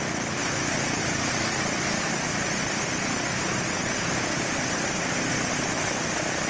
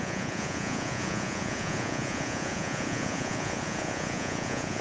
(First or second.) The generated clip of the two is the second